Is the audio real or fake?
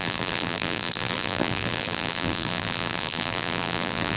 fake